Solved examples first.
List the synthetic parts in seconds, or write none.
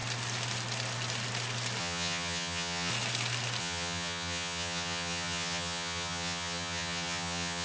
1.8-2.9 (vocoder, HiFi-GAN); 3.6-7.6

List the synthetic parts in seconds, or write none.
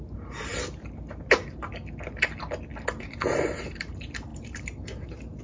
0.0-0.5 (vocoder, BigVGAN v2); 3.0-5.4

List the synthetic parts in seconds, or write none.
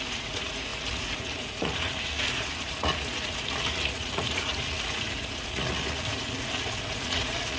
0.0-7.6 (vocoder, Vocos)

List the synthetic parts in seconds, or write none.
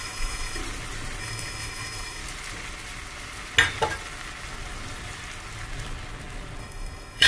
0.0-0.6 (autoencoder, DAC-VAE); 1.2-2.2; 6.6-7.3